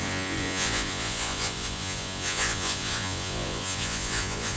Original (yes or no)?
no